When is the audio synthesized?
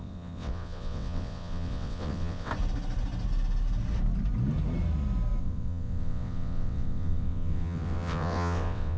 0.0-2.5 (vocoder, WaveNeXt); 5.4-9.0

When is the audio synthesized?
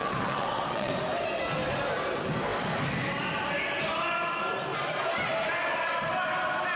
0.0-0.9 (vocoder, WaveNeXt)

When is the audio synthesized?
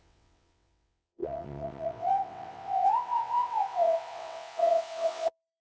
0.0-5.6 (vocoder, WaveNeXt)